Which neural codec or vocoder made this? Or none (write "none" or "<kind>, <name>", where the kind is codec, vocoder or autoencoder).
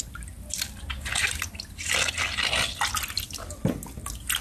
none